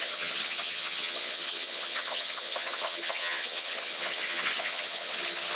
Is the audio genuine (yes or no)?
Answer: no